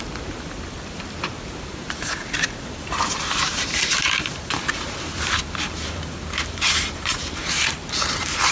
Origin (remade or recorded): remade